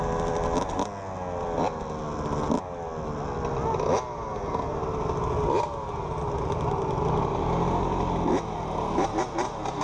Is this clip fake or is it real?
real